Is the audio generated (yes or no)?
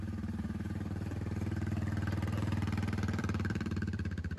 yes